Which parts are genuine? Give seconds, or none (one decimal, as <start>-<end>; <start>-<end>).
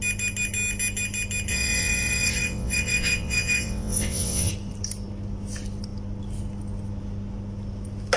0.0-1.5; 4.5-8.2